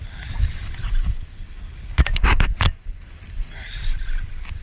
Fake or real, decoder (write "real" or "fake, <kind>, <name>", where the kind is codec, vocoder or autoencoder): real